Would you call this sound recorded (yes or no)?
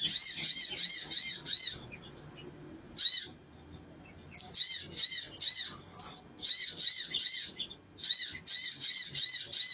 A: yes